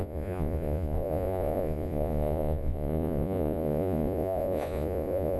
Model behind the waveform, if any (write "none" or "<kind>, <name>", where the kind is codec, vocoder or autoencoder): vocoder, Vocos